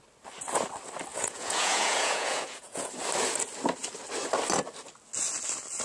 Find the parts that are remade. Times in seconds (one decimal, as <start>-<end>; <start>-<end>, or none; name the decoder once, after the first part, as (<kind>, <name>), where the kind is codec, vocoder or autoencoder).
1.1-2.9 (vocoder, Vocos)